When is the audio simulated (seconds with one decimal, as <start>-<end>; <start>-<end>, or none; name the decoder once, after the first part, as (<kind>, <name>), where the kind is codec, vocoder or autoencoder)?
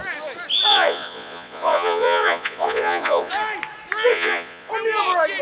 0.7-3.3 (vocoder, Vocos); 4.1-4.7